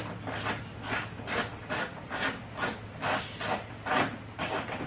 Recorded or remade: recorded